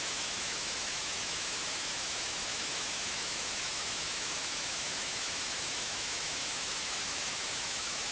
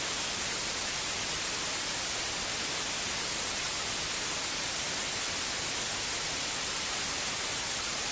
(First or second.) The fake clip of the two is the first